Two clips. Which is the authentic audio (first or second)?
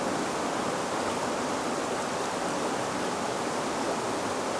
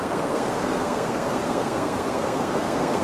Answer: first